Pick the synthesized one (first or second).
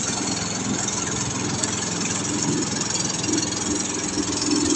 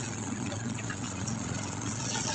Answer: second